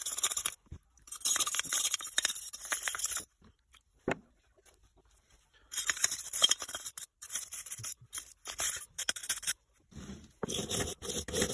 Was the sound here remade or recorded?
remade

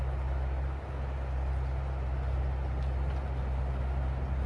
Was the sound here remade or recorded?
recorded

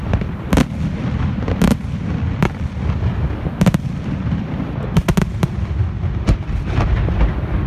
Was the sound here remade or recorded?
recorded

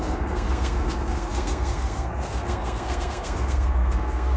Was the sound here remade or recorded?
remade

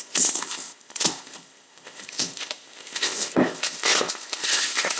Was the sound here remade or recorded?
remade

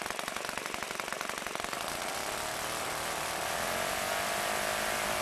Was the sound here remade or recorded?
remade